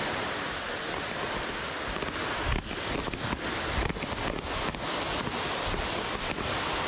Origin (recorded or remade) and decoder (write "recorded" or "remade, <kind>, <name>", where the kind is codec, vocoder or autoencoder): recorded